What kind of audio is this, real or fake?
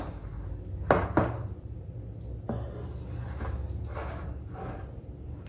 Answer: real